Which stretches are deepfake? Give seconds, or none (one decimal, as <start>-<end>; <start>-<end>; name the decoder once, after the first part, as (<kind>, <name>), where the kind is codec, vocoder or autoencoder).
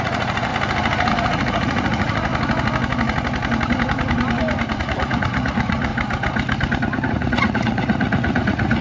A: 0.0-0.5 (vocoder, Vocos); 1.1-2.3; 4.8-5.9; 7.1-8.8